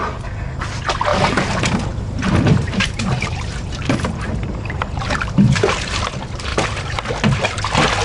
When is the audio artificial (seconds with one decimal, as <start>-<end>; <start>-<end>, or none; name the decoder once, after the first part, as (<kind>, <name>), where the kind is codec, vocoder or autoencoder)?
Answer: 1.1-5.9 (vocoder, BigVGAN v2); 6.5-7.0